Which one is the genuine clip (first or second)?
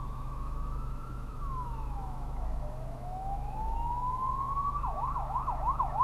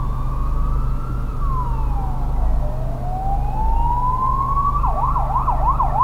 second